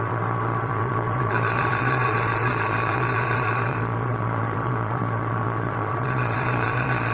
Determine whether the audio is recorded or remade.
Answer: remade